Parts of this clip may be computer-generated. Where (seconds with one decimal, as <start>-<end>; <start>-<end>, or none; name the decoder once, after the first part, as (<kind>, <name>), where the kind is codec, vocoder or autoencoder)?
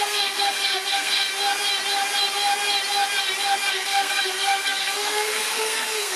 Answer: 0.0-1.3 (codec, SNAC); 3.7-6.2